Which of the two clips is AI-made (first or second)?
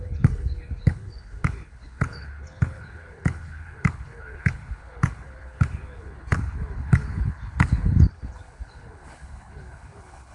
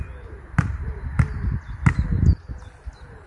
first